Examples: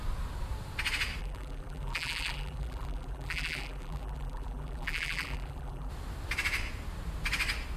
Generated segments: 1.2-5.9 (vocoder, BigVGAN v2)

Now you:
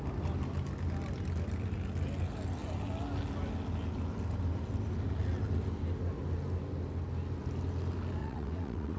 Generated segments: 8.2-9.0 (vocoder, WaveNeXt)